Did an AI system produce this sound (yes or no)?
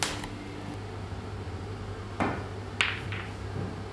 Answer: no